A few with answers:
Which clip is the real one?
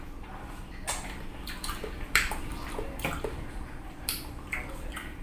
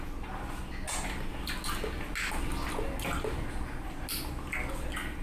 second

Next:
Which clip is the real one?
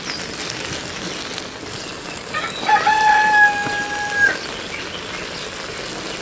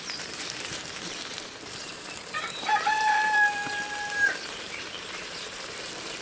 first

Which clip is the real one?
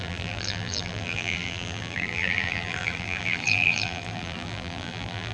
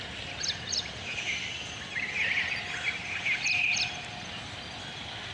second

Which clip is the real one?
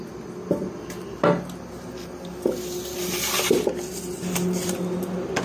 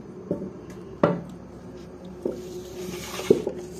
first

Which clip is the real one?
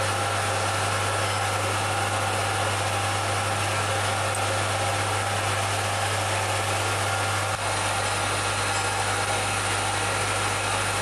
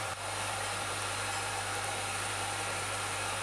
first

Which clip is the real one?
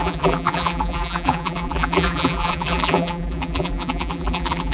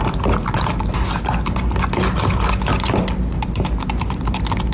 second